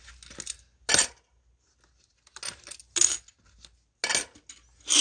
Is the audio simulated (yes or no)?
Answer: no